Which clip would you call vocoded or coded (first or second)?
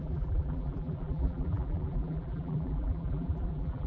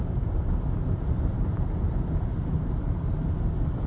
first